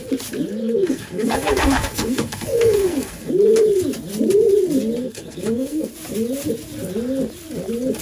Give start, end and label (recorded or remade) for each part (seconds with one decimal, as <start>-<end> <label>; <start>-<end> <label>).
0.0-0.6 recorded; 0.6-3.3 remade; 3.3-5.0 recorded; 5.0-5.9 remade; 5.9-8.0 recorded